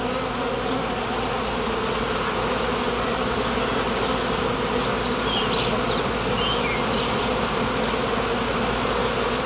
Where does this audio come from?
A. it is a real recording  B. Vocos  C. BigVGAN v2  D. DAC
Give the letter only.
A